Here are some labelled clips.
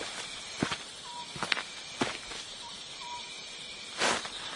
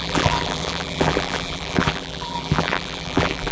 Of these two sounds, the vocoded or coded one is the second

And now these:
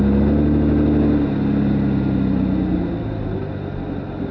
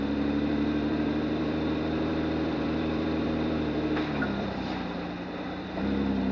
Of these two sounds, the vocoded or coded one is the second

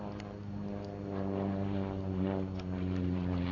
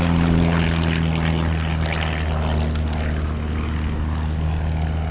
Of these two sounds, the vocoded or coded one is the first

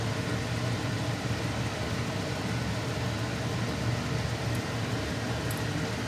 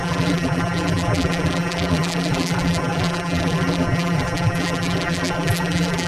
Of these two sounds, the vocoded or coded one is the second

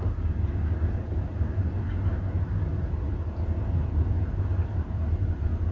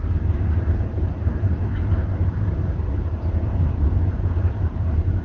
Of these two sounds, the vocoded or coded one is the second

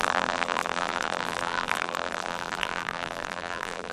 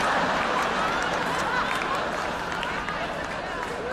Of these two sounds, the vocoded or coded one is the first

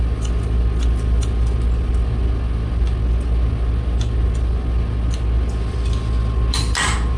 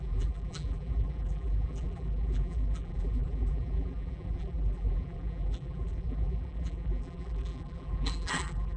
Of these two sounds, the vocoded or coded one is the second